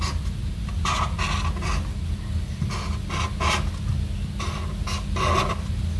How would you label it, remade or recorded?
recorded